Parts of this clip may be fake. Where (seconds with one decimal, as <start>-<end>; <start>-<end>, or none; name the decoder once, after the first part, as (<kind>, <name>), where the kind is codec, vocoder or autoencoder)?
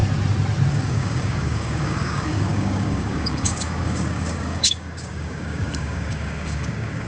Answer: 0.7-7.1 (codec, DAC)